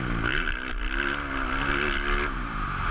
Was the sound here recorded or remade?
recorded